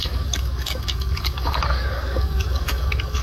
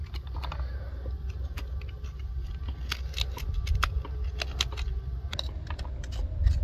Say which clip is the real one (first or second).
second